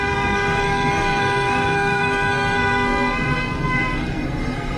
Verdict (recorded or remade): remade